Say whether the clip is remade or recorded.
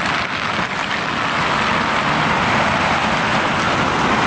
recorded